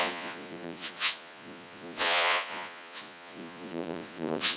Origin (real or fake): fake